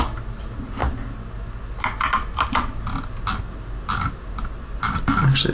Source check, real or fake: real